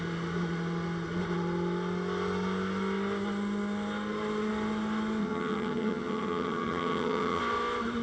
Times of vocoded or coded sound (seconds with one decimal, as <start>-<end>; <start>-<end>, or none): 5.2-7.4

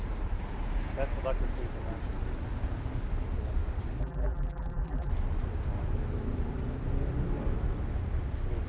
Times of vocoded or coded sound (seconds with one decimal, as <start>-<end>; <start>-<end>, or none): 4.0-5.1

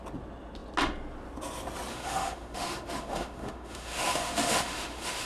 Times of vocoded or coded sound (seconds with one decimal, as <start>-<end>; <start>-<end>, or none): 1.9-5.3

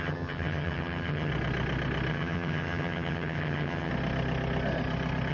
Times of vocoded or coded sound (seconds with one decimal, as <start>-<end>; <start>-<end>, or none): 0.0-1.3; 2.1-3.9

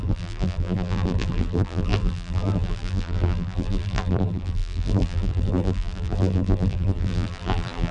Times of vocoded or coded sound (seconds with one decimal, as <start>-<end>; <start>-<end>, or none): 0.0-7.9